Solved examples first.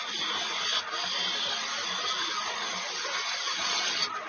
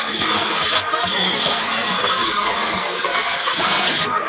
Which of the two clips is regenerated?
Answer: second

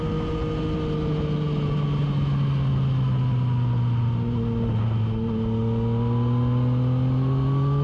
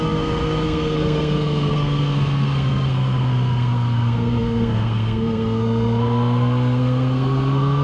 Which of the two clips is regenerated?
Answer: second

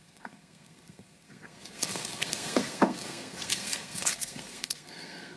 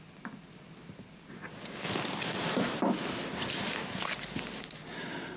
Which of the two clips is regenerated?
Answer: first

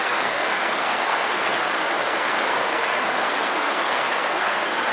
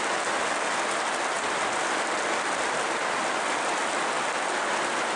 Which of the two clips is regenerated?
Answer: first